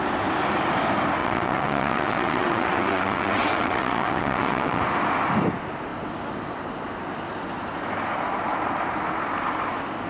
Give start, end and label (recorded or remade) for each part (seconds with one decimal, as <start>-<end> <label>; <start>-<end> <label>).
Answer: 0.0-1.2 recorded; 1.2-4.8 remade; 4.8-10.1 recorded